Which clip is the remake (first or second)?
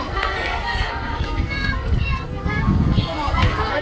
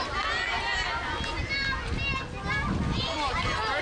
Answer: first